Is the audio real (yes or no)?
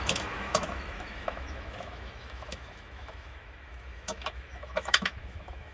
no